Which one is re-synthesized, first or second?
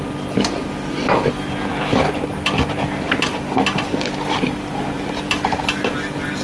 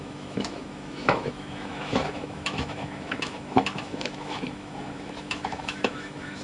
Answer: second